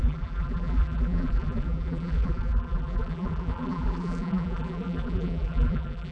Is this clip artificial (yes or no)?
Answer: yes